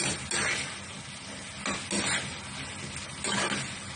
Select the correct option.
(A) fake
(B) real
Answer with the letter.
B